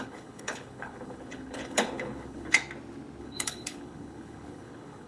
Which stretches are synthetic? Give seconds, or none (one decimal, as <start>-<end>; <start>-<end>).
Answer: 0.0-2.6; 3.2-5.1